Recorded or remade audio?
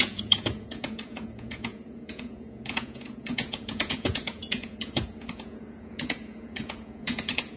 remade